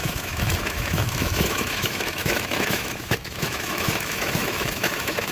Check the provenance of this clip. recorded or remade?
remade